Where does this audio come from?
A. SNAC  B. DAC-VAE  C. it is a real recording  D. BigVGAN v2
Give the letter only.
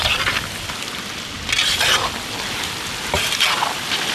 C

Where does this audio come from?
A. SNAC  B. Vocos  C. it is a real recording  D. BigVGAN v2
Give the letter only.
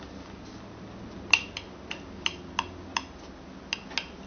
C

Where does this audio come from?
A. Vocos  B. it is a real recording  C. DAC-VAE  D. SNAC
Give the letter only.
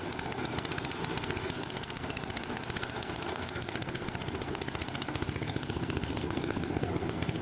D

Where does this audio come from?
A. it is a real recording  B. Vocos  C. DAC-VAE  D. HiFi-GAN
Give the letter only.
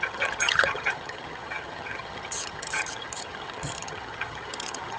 D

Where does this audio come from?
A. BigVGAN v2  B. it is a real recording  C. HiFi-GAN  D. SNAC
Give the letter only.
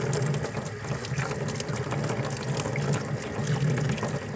B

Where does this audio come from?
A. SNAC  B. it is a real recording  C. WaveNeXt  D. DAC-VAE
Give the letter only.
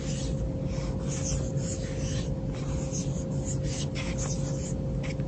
B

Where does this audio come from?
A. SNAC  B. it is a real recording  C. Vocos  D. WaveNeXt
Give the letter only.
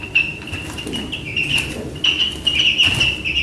B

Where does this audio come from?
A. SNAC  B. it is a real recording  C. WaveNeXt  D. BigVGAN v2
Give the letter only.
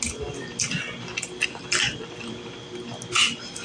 B